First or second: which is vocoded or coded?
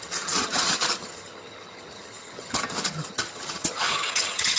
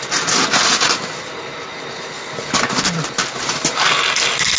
first